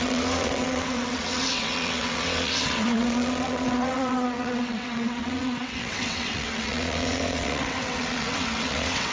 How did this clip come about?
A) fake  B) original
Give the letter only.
A